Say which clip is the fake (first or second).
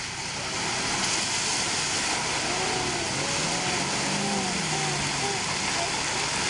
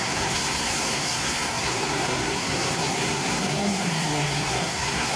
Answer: second